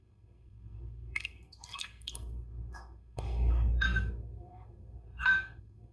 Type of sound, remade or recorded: remade